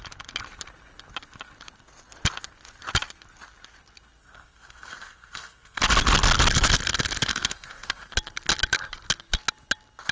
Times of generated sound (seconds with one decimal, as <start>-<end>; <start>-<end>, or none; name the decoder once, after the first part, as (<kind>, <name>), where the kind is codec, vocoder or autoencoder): 4.2-5.8 (codec, SNAC); 7.3-8.1